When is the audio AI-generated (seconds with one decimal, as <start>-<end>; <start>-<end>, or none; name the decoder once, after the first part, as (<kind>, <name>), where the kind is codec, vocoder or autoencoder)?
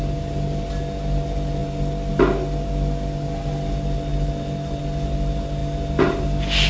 none